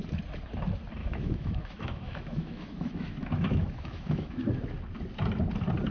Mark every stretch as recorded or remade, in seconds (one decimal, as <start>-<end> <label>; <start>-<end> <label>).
0.0-1.0 recorded; 1.0-4.5 remade; 4.5-5.9 recorded